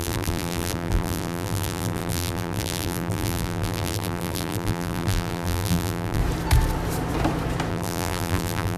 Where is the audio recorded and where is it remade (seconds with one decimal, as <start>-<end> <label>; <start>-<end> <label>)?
0.0-6.2 remade; 6.2-7.7 recorded; 7.7-8.8 remade

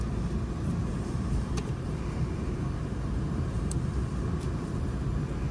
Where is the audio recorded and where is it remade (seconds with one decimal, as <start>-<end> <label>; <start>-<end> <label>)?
0.0-0.8 recorded; 0.8-4.1 remade; 4.1-5.5 recorded